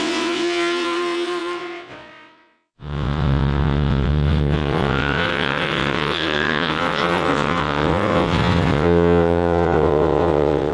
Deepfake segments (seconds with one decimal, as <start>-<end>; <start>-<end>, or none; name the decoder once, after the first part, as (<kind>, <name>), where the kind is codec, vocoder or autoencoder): 0.0-10.7 (vocoder, WaveNeXt)